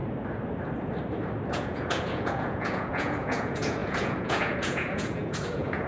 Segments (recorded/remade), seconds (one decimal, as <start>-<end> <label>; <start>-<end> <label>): 0.0-1.5 recorded; 1.5-5.9 remade